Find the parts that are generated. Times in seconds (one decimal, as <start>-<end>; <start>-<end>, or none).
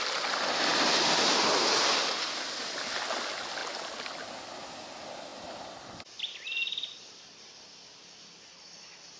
5.3-8.0